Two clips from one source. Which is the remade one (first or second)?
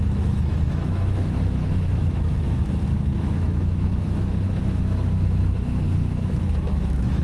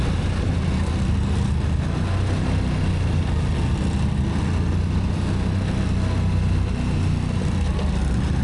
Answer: first